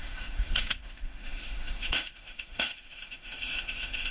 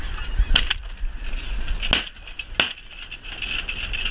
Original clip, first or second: second